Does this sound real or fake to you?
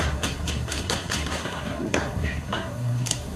fake